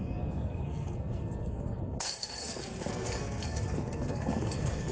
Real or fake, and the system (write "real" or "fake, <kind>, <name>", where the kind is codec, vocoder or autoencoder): fake, codec, SNAC